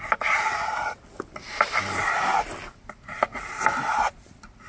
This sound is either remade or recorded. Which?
recorded